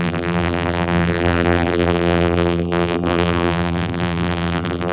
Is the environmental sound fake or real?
fake